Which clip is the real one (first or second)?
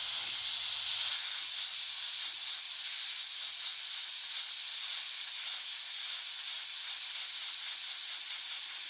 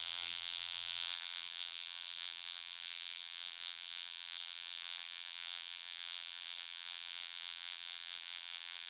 first